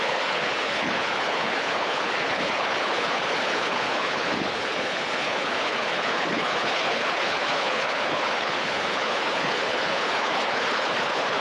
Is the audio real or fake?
fake